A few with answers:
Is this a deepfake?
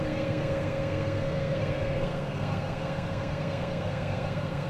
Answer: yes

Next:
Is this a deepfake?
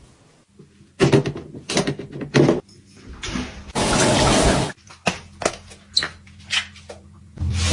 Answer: no